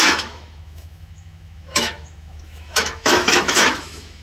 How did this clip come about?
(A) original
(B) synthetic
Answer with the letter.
B